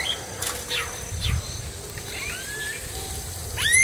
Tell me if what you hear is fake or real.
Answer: real